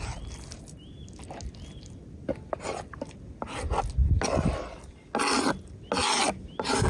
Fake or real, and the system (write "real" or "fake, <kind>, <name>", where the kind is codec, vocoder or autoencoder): real